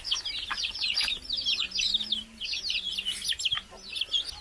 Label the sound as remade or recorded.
recorded